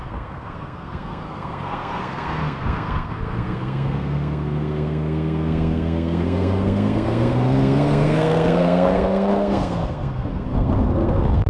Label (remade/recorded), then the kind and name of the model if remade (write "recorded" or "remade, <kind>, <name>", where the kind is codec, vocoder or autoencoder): remade, codec, SNAC